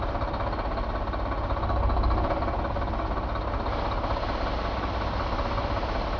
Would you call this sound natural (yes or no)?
yes